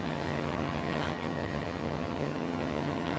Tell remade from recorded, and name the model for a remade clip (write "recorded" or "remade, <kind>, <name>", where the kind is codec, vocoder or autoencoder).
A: remade, vocoder, HiFi-GAN